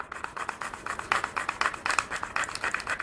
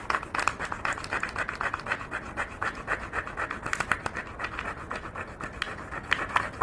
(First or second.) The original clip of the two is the second